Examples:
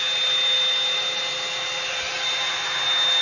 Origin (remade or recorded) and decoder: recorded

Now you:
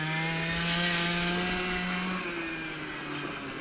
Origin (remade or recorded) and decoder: recorded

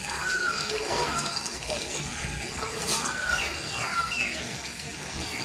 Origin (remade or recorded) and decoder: remade, codec, SNAC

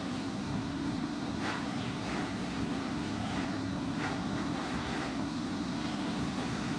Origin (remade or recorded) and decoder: remade, codec, SNAC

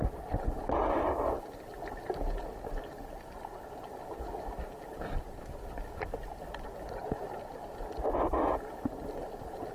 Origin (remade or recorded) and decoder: recorded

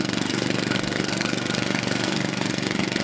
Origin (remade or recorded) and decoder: remade, codec, SNAC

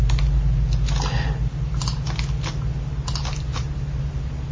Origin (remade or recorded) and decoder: recorded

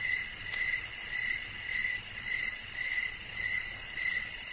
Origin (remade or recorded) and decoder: recorded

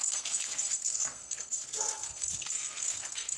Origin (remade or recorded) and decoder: remade, codec, SNAC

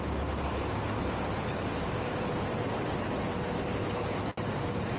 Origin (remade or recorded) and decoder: recorded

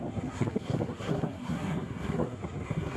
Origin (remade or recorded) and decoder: remade, codec, SNAC